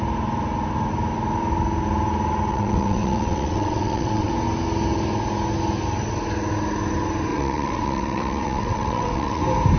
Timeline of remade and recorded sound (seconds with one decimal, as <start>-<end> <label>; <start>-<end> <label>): 0.0-2.5 recorded; 2.5-4.3 remade; 4.3-7.3 recorded; 7.3-9.4 remade; 9.4-9.8 recorded